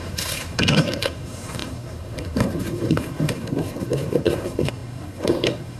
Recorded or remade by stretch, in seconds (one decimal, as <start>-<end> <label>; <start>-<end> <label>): 0.0-5.8 remade